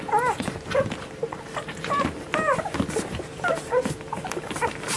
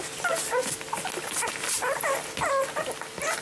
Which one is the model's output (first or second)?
first